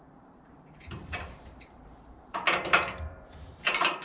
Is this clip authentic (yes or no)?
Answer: no